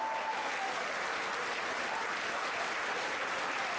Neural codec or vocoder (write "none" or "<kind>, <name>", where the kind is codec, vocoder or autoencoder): none